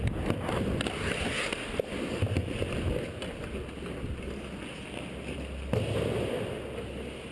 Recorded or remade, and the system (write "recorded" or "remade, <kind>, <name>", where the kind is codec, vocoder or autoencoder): recorded